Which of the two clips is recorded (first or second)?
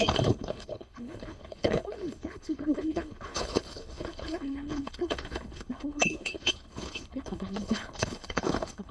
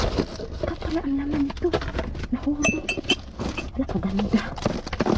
second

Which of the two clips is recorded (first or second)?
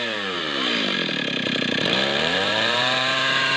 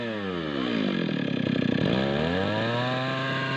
second